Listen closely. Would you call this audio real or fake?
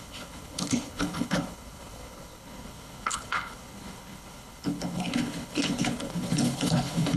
fake